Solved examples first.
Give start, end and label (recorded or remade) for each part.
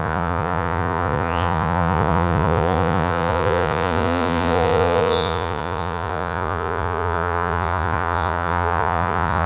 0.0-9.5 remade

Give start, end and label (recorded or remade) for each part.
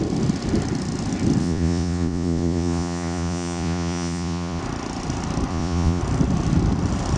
0.0-1.4 recorded; 1.4-4.6 remade; 4.6-5.5 recorded; 5.5-6.0 remade; 6.0-7.2 recorded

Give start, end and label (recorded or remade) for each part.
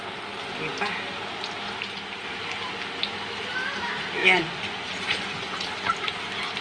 0.0-4.2 recorded; 4.2-5.9 remade; 5.9-6.6 recorded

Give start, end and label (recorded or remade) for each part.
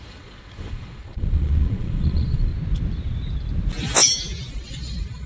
0.0-2.5 remade; 2.5-4.5 recorded; 4.5-5.3 remade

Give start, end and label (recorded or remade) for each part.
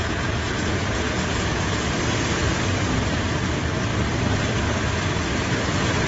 0.0-1.8 remade; 1.8-6.1 recorded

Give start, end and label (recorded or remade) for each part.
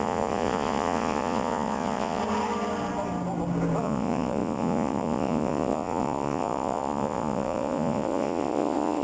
0.0-2.2 remade; 2.2-3.8 recorded; 3.8-9.0 remade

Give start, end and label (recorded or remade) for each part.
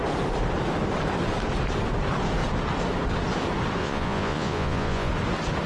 0.0-3.8 recorded; 3.8-5.1 remade; 5.1-5.7 recorded